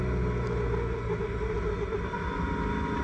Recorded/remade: recorded